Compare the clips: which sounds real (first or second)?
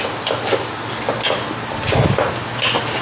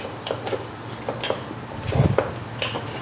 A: first